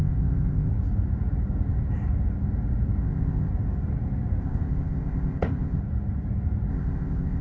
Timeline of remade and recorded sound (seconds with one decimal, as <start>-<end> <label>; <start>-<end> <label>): 0.0-0.7 remade; 0.7-3.0 recorded; 3.0-3.5 remade; 3.5-4.4 recorded; 4.4-5.8 remade; 5.8-6.7 recorded; 6.7-7.4 remade

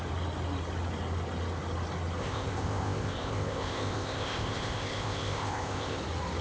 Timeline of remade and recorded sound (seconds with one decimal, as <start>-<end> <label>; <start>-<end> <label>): 0.0-2.2 recorded; 2.2-6.0 remade; 6.0-6.4 recorded